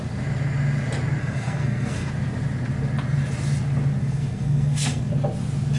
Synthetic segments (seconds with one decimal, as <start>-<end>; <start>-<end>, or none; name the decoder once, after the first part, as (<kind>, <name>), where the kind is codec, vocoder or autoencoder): 1.2-2.1 (codec, SNAC); 4.0-5.1